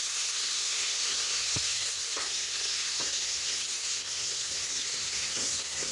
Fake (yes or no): yes